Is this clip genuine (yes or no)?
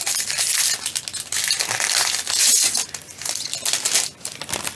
yes